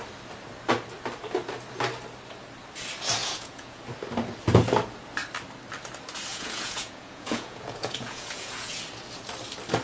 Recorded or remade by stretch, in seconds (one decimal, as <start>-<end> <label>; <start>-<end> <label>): 0.0-3.2 recorded; 3.2-3.8 remade; 3.8-6.3 recorded; 6.3-8.8 remade; 8.8-9.8 recorded

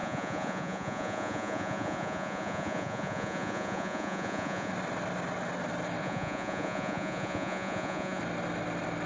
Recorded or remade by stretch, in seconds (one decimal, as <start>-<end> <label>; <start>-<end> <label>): 0.0-4.7 remade; 4.7-6.0 recorded; 6.0-8.2 remade; 8.2-9.1 recorded